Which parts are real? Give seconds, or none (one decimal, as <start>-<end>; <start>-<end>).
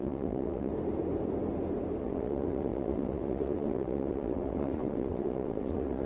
0.7-2.0